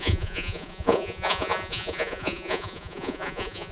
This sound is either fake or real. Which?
fake